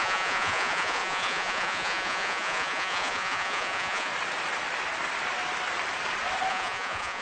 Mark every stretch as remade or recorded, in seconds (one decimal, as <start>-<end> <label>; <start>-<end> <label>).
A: 0.0-4.1 remade; 4.1-6.5 recorded; 6.5-7.2 remade

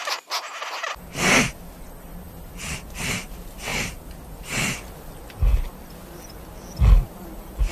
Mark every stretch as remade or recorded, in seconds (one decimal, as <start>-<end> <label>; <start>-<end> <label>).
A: 0.0-7.7 recorded

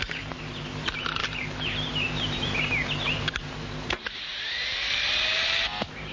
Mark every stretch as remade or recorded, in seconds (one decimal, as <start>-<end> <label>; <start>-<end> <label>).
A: 0.0-6.1 remade

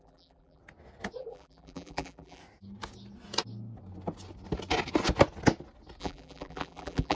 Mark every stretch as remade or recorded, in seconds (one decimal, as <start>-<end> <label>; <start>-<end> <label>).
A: 0.0-0.6 remade; 0.6-1.2 recorded; 1.2-2.4 remade; 2.4-6.0 recorded; 6.0-7.1 remade

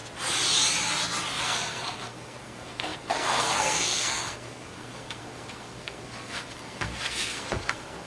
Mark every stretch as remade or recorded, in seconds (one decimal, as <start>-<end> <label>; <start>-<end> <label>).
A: 0.0-1.4 recorded; 1.4-8.1 remade